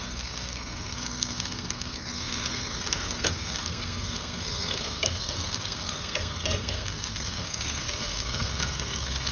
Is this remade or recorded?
remade